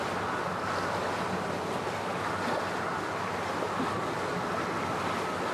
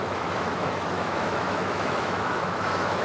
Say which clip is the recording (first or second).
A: first